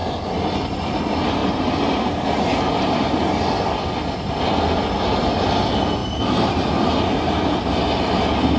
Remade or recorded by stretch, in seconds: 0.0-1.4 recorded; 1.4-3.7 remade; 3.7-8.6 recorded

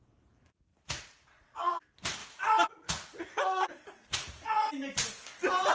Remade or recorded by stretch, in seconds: 0.0-0.7 recorded; 0.7-1.7 remade; 1.7-2.2 recorded; 2.2-4.7 remade; 4.7-5.7 recorded

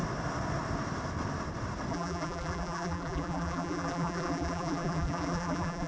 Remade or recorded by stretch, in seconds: 0.0-1.9 recorded; 1.9-5.9 remade

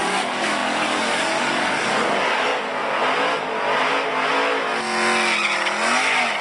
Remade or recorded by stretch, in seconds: 0.0-2.7 remade; 2.7-6.4 recorded